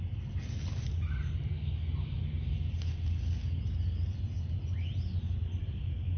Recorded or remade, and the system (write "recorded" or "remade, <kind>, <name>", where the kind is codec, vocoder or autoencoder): recorded